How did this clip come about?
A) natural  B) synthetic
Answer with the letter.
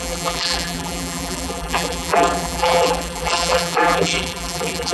B